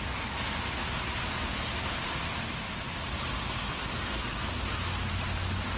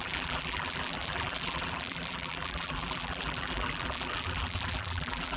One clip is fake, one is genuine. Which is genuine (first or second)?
first